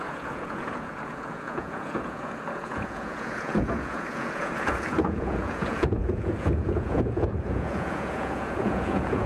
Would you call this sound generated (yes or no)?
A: yes